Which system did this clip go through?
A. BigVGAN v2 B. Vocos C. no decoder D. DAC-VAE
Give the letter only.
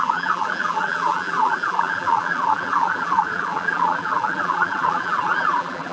A